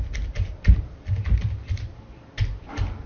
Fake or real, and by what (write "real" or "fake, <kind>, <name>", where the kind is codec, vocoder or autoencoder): real